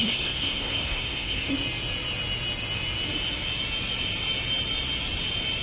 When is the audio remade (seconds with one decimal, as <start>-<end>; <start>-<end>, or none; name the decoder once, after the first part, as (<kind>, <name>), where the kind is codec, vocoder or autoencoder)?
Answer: 0.0-1.5 (codec, SNAC)